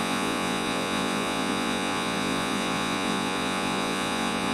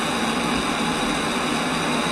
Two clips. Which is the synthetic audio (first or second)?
first